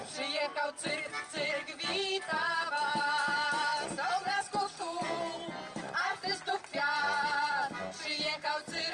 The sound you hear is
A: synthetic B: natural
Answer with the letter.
B